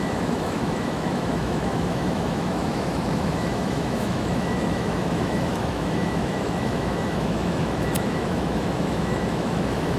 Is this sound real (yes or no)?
no